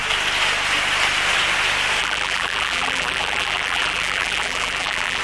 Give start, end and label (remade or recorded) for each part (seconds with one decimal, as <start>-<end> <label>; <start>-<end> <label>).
0.0-2.0 recorded; 2.0-5.2 remade